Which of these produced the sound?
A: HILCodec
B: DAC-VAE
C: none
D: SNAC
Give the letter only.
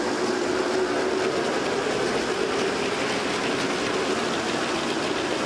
C